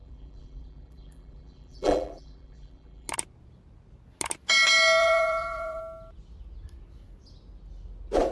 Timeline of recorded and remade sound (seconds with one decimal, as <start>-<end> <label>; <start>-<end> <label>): 0.0-3.1 remade; 3.1-5.0 recorded; 5.0-5.8 remade; 5.8-8.3 recorded